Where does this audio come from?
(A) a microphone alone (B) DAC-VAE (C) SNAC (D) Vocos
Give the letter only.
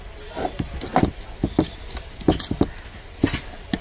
A